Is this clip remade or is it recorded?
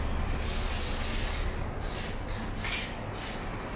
recorded